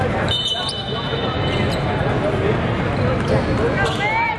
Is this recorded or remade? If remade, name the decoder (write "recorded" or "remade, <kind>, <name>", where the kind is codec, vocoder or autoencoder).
recorded